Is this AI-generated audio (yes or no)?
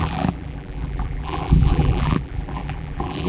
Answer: yes